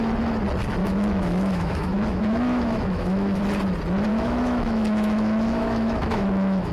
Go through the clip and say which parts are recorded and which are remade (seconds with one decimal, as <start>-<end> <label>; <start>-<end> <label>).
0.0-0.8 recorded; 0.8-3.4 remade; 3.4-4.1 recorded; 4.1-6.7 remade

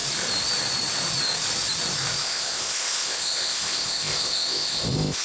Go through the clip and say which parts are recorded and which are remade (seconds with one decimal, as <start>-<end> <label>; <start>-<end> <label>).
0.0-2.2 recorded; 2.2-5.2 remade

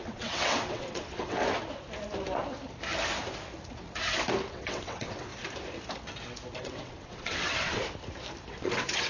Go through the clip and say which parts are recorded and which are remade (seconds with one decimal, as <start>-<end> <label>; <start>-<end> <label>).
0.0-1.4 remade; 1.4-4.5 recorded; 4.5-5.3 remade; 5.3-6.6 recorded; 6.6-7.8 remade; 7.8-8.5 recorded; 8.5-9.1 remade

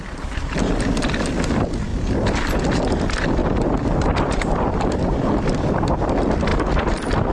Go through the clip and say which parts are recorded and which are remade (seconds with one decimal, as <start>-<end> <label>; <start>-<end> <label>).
0.0-1.9 recorded; 1.9-2.6 remade; 2.6-3.4 recorded; 3.4-6.1 remade; 6.1-7.3 recorded